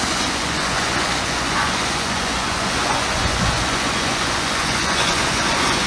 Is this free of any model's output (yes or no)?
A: no